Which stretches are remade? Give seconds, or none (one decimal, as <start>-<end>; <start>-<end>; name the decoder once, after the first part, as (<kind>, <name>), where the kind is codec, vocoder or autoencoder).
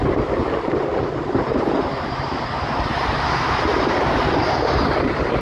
0.9-4.1 (vocoder, BigVGAN v2)